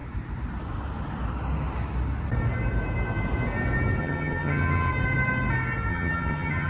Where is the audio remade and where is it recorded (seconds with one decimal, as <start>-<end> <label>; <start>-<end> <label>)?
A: 0.0-4.0 recorded; 4.0-4.9 remade; 4.9-5.9 recorded; 5.9-6.7 remade